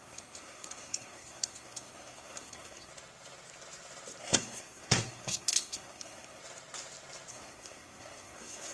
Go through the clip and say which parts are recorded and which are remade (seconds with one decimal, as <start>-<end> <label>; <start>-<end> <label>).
0.0-2.9 remade; 2.9-4.2 recorded; 4.2-6.4 remade; 6.4-7.3 recorded; 7.3-8.7 remade